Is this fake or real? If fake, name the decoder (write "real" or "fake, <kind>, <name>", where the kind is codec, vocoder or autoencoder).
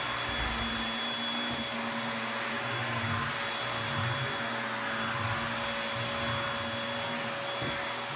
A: real